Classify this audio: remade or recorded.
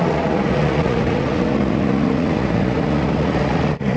remade